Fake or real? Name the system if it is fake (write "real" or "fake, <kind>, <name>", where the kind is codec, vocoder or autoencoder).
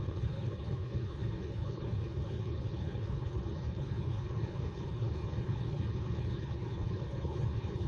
fake, codec, HILCodec